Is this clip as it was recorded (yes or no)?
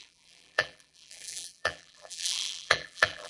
no